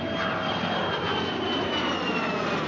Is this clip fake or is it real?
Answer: real